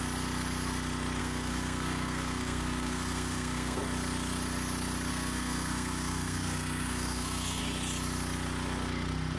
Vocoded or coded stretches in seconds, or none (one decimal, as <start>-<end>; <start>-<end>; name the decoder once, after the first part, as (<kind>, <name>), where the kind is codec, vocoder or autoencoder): 1.2-3.8 (codec, SNAC); 5.1-7.6